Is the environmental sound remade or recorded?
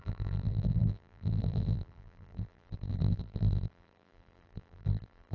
remade